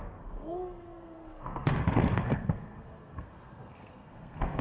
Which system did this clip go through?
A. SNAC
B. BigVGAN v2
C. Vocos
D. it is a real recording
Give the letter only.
A